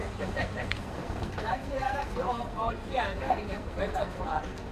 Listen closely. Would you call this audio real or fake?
fake